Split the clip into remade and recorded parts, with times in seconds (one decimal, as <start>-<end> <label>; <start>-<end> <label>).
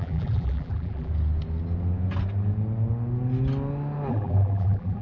0.0-1.1 remade; 1.1-4.1 recorded; 4.1-5.0 remade